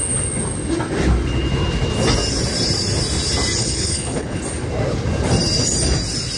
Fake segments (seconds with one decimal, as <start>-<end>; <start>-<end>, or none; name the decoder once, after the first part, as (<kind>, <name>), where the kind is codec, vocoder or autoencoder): 3.6-4.4 (codec, HILCodec)